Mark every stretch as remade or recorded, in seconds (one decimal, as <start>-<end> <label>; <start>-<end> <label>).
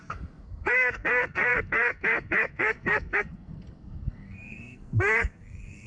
0.0-5.9 remade